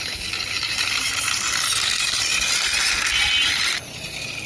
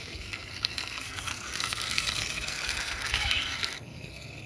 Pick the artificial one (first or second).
second